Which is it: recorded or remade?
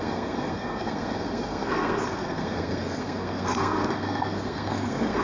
remade